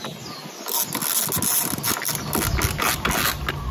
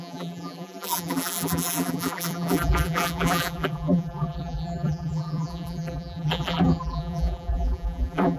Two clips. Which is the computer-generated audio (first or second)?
second